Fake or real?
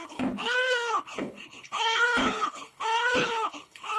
fake